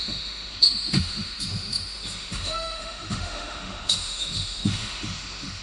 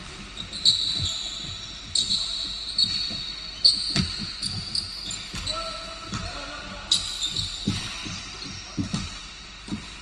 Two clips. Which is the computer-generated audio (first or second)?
first